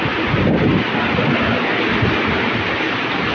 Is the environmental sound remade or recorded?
recorded